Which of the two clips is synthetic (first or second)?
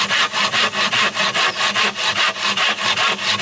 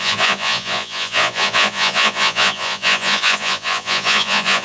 second